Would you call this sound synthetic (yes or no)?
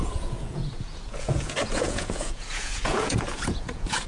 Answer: yes